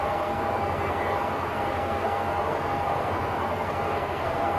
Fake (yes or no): yes